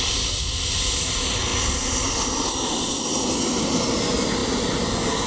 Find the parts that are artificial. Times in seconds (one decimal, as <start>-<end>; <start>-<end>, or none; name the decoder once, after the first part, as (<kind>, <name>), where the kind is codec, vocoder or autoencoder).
none